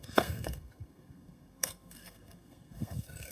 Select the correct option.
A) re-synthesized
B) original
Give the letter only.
A